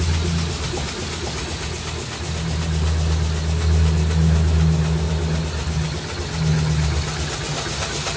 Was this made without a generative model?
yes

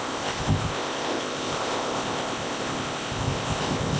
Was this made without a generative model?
no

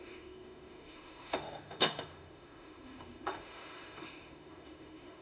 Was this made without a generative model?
no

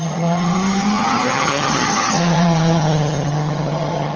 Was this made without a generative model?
no